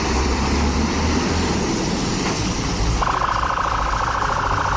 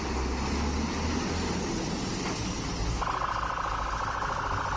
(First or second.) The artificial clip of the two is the first